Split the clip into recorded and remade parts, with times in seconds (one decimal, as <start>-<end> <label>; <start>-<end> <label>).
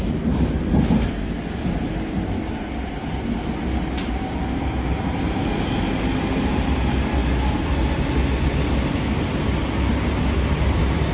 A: 0.0-11.1 recorded